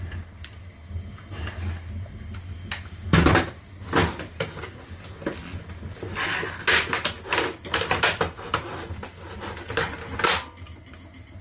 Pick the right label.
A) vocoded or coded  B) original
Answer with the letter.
B